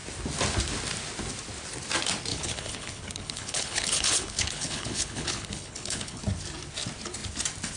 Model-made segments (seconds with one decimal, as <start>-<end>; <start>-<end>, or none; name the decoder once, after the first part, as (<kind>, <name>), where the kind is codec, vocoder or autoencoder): 2.3-6.2 (codec, HILCodec)